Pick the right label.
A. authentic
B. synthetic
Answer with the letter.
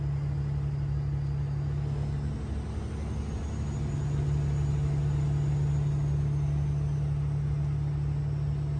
A